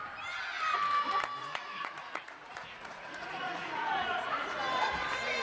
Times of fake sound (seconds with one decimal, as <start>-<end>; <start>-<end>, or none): 1.4-4.6